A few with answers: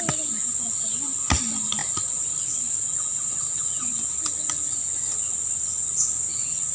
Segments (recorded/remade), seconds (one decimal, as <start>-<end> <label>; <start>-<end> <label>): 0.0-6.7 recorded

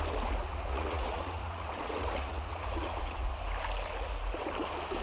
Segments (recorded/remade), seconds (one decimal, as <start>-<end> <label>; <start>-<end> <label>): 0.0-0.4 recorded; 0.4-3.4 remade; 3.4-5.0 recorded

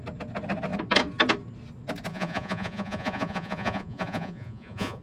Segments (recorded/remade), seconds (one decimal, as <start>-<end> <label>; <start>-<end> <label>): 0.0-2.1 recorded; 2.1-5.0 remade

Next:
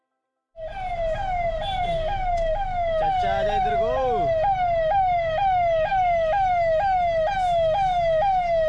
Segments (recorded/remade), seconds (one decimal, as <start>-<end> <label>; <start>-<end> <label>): 0.0-8.7 recorded

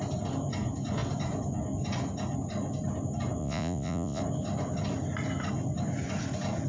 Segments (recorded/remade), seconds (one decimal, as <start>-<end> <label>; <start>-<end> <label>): 0.0-3.4 recorded; 3.4-4.2 remade; 4.2-6.7 recorded